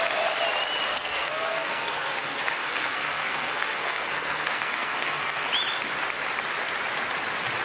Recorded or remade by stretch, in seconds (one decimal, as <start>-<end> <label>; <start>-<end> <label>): 0.0-0.9 recorded; 0.9-5.5 remade; 5.5-7.6 recorded